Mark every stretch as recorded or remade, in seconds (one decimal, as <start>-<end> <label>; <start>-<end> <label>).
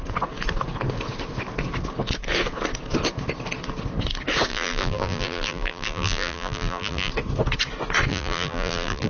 0.0-4.5 recorded; 4.5-7.1 remade; 7.1-8.1 recorded; 8.1-9.1 remade